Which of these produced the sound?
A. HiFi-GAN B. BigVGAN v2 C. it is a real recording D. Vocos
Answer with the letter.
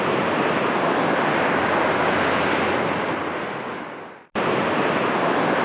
C